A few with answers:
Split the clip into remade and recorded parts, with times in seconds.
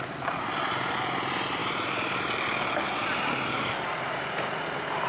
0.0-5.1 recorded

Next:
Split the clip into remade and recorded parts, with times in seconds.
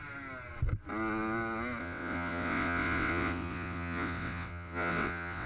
0.0-1.8 recorded; 1.8-5.5 remade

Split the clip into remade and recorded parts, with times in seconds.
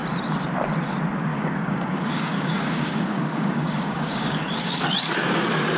0.0-1.3 recorded; 1.3-4.8 remade; 4.8-5.8 recorded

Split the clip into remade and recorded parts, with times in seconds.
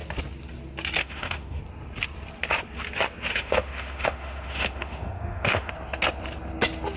0.0-1.0 recorded; 1.0-1.6 remade; 1.6-3.3 recorded; 3.3-5.7 remade; 5.7-7.0 recorded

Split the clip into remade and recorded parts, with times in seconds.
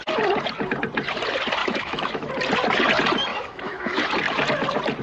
0.0-1.6 recorded; 1.6-2.3 remade; 2.3-3.3 recorded; 3.3-4.0 remade; 4.0-5.0 recorded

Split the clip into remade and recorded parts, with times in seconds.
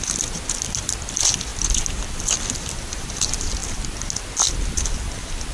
0.0-5.5 recorded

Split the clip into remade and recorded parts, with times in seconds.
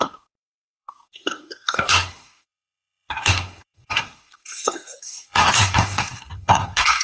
0.0-7.0 remade